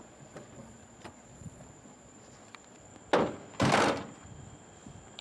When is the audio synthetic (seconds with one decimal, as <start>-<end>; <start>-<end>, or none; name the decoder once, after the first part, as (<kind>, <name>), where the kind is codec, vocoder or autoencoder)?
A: 0.0-2.9 (vocoder, Vocos)